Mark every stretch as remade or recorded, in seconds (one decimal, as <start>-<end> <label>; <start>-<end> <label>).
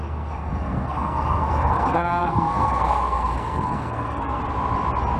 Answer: 0.0-4.4 remade; 4.4-5.2 recorded